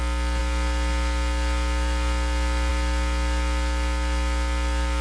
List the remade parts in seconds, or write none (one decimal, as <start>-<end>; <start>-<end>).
none

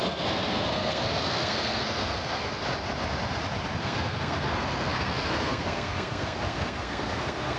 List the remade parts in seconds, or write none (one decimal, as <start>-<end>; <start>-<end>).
0.0-2.6; 3.8-7.6

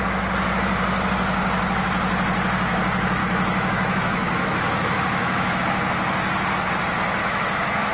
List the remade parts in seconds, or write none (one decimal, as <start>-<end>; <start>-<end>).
3.2-5.6; 7.2-7.9

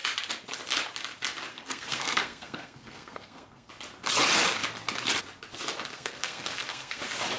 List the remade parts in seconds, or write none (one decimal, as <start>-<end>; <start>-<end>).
1.5-3.7; 5.9-7.0

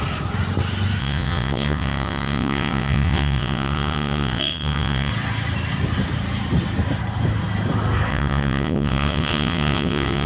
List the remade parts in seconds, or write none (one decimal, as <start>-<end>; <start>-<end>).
1.0-5.1; 8.1-10.3

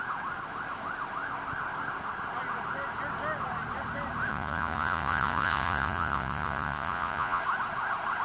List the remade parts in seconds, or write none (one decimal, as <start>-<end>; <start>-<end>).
4.3-7.4

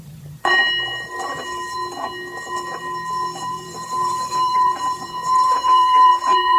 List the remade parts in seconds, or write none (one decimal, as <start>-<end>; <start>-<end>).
0.0-0.6; 3.4-6.6